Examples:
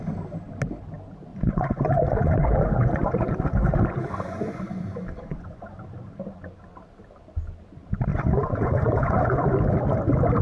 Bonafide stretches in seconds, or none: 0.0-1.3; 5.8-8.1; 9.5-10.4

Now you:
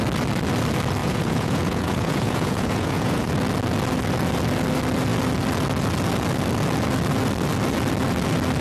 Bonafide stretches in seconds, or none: 0.0-1.0; 3.3-8.6